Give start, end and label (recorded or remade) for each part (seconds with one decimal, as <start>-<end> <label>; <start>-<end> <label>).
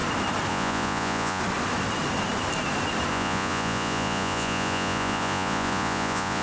0.0-0.5 recorded; 0.5-1.4 remade; 1.4-3.1 recorded; 3.1-6.4 remade